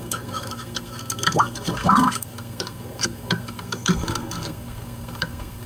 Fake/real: fake